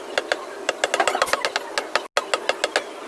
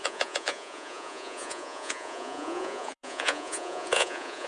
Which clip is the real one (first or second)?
first